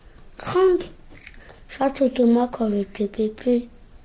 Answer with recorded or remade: recorded